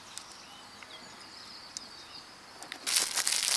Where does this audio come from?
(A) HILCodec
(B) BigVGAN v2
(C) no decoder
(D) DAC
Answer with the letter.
C